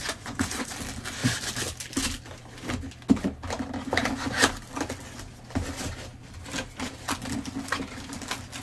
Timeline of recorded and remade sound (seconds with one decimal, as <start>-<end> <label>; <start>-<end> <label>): 0.0-0.7 remade; 0.7-8.6 recorded